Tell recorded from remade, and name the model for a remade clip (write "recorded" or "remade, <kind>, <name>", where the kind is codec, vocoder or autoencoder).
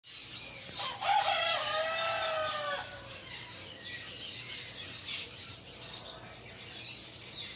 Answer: recorded